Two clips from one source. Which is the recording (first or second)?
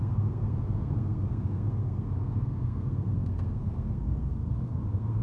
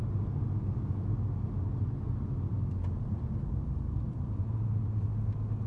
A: second